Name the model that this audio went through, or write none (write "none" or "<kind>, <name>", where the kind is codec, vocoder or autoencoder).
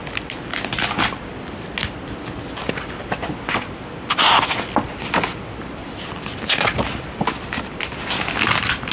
none